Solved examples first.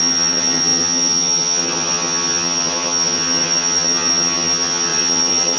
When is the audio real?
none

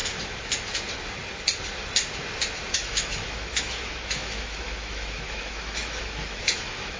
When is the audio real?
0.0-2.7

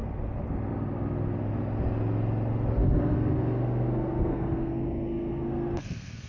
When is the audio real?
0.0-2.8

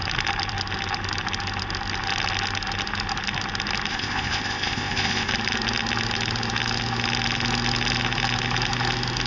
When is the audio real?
0.0-3.9; 5.3-9.3

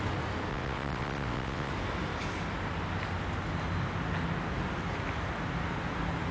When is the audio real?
0.0-0.5; 1.7-6.3

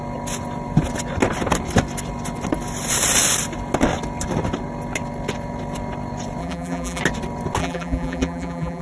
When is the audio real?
0.0-6.4; 7.0-7.6